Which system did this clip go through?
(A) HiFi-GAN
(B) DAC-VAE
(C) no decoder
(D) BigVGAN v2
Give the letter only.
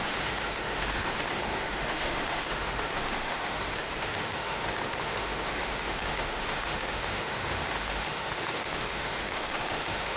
B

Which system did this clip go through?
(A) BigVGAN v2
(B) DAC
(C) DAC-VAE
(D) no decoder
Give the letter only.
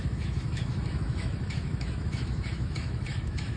C